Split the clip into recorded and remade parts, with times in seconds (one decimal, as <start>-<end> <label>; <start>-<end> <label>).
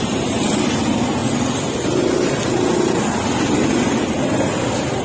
0.0-5.0 recorded